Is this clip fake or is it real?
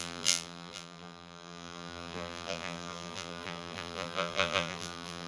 fake